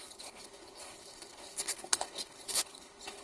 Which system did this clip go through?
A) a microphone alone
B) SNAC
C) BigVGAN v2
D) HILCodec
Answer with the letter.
D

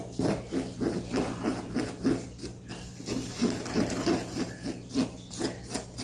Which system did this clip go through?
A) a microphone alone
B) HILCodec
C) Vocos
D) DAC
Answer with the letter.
A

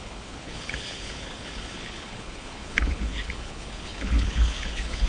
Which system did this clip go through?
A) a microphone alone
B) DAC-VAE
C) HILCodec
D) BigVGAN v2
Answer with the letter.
C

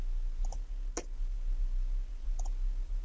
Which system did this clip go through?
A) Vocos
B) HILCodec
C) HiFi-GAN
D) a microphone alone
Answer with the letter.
D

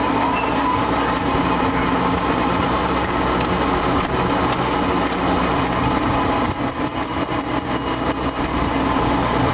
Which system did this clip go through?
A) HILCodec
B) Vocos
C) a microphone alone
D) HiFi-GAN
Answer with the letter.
C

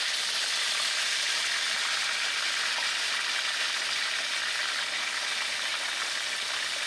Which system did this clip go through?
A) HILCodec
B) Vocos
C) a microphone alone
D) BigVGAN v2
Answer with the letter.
C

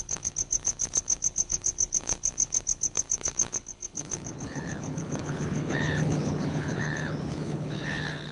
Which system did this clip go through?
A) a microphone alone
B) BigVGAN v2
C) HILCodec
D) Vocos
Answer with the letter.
C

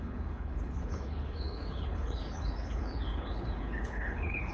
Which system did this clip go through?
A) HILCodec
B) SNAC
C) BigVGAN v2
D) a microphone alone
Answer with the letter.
A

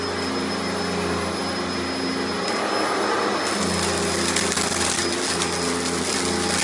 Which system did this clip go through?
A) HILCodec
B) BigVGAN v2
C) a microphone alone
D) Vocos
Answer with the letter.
C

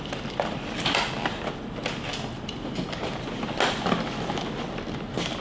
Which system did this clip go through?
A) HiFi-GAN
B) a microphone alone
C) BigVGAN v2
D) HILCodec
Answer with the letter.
B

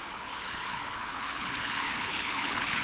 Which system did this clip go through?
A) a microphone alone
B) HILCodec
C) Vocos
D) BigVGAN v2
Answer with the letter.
B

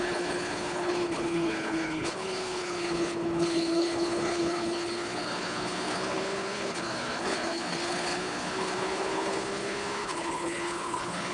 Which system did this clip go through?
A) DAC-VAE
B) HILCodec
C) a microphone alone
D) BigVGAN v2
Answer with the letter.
B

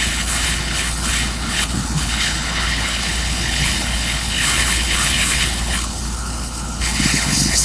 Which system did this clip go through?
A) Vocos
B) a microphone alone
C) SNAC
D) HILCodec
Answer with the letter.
D